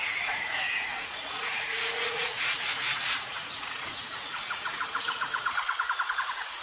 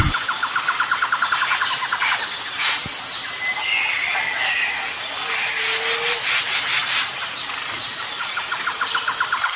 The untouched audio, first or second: second